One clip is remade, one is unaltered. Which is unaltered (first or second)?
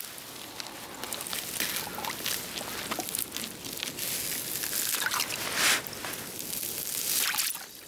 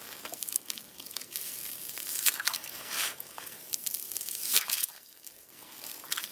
first